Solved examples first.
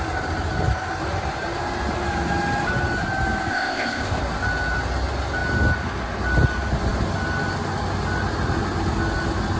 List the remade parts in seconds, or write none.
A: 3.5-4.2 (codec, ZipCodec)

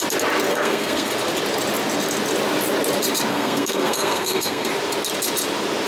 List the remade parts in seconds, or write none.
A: 0.5-1.1 (codec, SNAC); 3.3-4.7

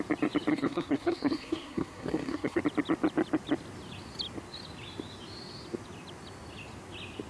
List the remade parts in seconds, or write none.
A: 0.5-2.6 (codec, SNAC)

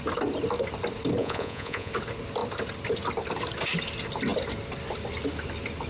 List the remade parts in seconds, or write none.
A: 1.2-1.9 (vocoder, Vocos)